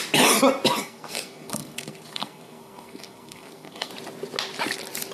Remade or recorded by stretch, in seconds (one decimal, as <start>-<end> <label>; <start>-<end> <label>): 0.0-0.8 recorded; 0.8-3.9 remade; 3.9-5.1 recorded